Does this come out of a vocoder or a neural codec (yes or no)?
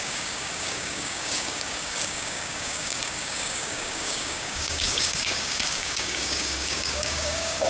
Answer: yes